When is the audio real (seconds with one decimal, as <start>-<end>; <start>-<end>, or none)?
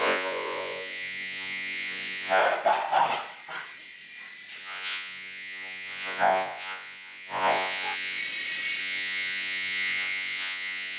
2.4-4.6; 8.2-8.8